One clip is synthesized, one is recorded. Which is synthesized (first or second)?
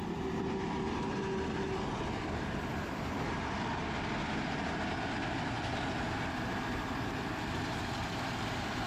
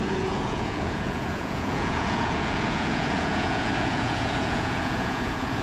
second